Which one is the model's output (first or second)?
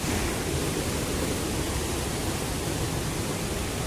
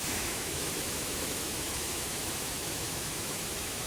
second